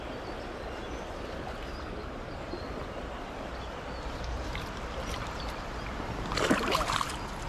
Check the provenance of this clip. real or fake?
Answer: real